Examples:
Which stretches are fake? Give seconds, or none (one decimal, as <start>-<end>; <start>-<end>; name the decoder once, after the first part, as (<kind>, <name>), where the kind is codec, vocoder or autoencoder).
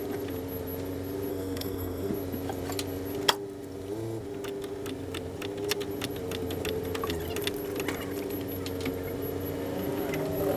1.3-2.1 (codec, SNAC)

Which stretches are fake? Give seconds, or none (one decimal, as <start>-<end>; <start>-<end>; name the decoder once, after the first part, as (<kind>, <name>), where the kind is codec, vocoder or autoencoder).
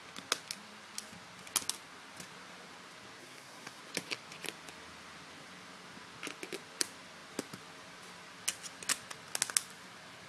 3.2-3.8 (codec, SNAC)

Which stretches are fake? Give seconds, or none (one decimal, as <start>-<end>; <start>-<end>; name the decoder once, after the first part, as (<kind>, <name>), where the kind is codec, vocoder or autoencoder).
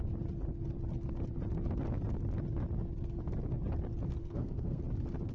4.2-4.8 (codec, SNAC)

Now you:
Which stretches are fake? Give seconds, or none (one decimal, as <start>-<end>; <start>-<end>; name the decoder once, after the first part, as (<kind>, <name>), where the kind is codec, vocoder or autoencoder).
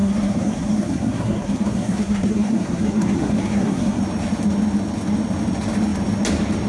0.0-4.0 (codec, SNAC)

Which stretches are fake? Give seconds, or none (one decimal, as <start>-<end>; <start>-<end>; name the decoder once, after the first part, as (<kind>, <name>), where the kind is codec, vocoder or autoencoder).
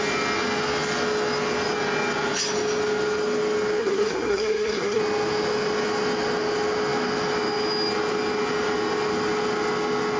3.8-5.0 (codec, SNAC)